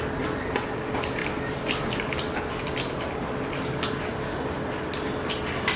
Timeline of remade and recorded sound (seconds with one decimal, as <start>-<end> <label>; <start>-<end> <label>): 0.0-5.8 recorded